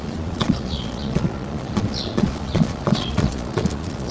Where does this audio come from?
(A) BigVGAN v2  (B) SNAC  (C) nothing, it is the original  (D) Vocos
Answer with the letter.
D